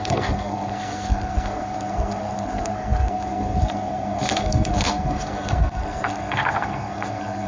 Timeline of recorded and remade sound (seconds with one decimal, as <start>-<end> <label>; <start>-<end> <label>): 0.0-7.5 remade